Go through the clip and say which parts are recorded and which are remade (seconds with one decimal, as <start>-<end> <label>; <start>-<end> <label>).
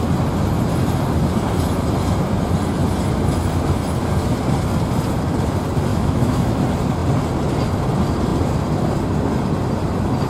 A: 0.0-5.9 recorded; 5.9-6.6 remade; 6.6-10.3 recorded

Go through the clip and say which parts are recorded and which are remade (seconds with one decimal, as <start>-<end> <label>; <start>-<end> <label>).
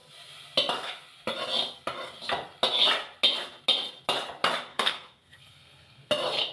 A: 0.0-4.7 recorded; 4.7-6.1 remade; 6.1-6.5 recorded